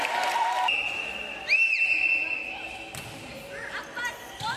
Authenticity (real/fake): real